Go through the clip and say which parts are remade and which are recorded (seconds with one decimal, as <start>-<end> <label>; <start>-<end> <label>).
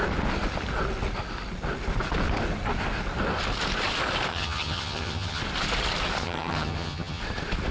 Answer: 0.0-4.3 recorded; 4.3-5.4 remade; 5.4-6.2 recorded; 6.2-7.2 remade; 7.2-7.7 recorded